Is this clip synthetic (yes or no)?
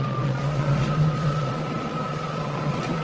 yes